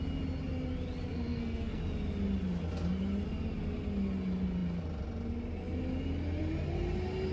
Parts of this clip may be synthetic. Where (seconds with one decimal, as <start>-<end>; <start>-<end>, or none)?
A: 1.1-1.8